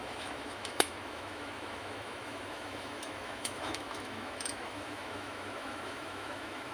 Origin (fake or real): fake